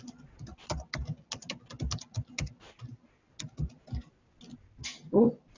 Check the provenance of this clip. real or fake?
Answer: real